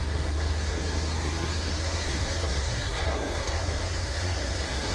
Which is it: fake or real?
fake